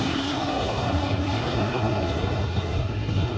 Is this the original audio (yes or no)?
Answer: no